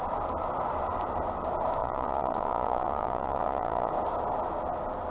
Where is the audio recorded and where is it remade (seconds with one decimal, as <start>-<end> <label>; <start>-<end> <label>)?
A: 0.0-1.8 recorded; 1.8-3.9 remade; 3.9-5.1 recorded